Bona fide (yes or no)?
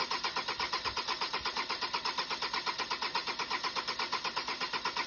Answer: yes